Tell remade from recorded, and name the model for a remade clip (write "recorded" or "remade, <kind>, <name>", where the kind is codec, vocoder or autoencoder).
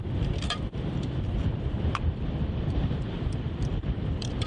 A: remade, vocoder, BigVGAN v2